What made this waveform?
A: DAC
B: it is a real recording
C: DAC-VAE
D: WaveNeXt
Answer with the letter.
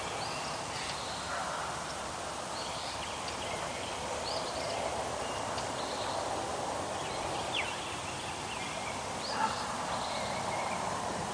B